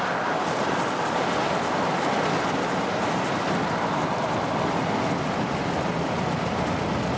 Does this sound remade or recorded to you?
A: recorded